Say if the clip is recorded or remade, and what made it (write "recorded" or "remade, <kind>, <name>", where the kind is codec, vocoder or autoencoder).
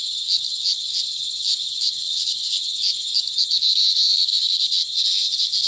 remade, codec, DAC